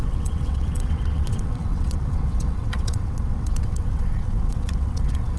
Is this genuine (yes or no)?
no